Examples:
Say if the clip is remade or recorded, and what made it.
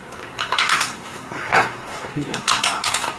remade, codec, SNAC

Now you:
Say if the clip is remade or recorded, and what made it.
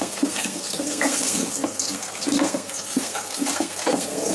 remade, codec, SNAC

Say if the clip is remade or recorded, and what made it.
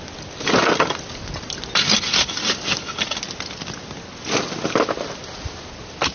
recorded